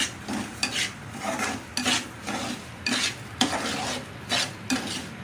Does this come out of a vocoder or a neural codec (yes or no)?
no